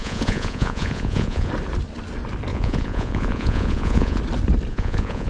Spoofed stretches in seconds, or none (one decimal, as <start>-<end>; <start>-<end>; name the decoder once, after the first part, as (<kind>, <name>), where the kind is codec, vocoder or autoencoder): 0.0-1.5 (vocoder, Vocos); 2.5-4.2; 4.7-5.3